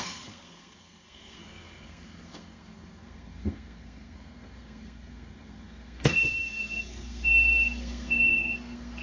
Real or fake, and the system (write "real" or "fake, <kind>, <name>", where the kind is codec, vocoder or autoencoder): fake, codec, SNAC